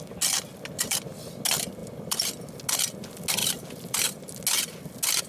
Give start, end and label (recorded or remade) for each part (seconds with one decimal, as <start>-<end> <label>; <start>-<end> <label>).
0.0-1.8 recorded; 1.8-2.4 remade; 2.4-3.4 recorded; 3.4-4.0 remade; 4.0-5.3 recorded